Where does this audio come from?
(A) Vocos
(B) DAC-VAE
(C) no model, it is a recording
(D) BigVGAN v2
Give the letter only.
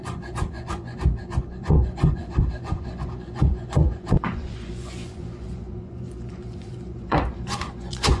A